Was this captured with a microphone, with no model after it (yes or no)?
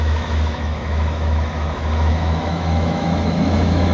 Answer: no